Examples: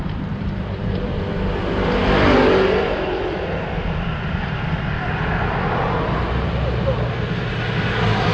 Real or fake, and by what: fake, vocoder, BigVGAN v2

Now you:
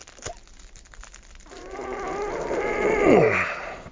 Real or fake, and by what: real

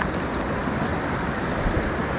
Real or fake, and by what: real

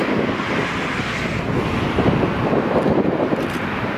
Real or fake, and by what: real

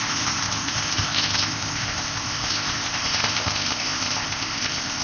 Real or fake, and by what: fake, codec, ZipCodec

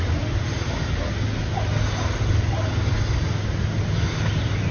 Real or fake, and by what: real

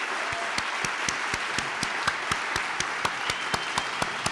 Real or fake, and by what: real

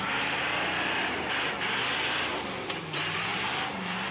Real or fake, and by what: real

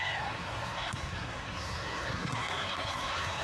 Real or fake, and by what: fake, codec, SNAC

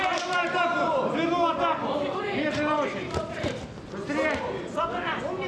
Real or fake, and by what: real